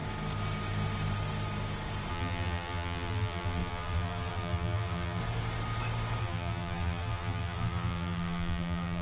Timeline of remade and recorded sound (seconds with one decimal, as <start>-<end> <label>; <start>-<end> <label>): 0.0-2.1 recorded; 2.1-5.2 remade; 5.2-6.2 recorded; 6.2-9.0 remade